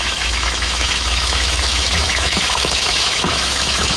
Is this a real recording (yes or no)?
no